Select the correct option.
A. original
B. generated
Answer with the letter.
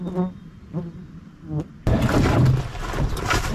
A